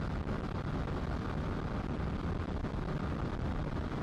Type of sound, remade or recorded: recorded